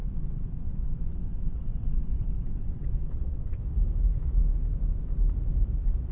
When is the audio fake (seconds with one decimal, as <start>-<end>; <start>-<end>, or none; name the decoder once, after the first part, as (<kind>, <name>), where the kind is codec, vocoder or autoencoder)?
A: 0.0-3.6 (vocoder, WaveNeXt)